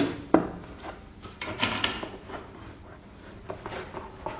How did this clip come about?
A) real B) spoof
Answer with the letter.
A